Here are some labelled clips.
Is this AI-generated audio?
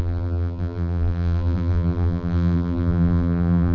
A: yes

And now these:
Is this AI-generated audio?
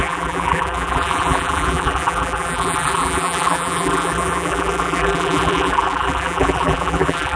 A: yes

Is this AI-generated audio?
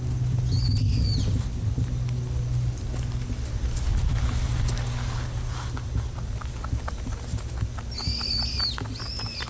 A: no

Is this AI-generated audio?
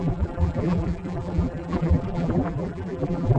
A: yes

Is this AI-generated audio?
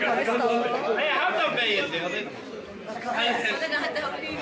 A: no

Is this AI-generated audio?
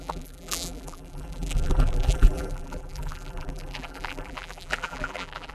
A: yes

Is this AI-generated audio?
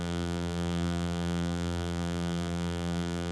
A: yes